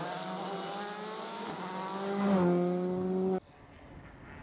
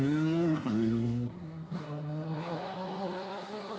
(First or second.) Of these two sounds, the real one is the first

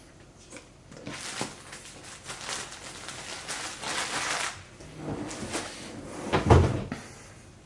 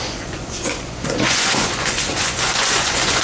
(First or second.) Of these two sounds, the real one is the first